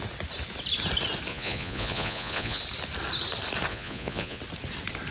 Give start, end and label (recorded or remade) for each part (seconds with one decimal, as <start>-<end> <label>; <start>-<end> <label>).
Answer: 0.0-1.3 recorded; 1.3-2.6 remade; 2.6-3.7 recorded; 3.7-4.4 remade; 4.4-5.1 recorded